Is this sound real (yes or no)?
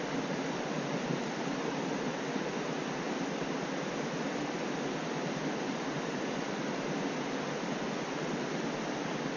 yes